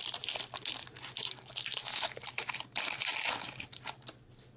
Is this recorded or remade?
recorded